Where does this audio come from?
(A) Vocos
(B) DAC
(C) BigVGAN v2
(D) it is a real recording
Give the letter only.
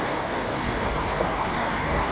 B